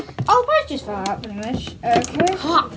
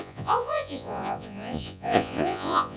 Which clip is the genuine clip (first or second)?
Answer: first